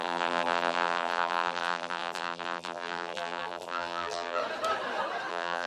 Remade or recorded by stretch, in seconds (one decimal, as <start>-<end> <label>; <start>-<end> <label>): 0.0-4.4 remade; 4.4-5.3 recorded; 5.3-5.7 remade